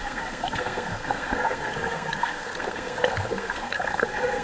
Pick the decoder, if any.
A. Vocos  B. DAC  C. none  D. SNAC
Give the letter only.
D